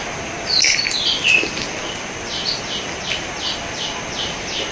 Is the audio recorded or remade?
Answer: recorded